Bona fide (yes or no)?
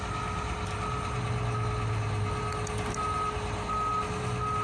yes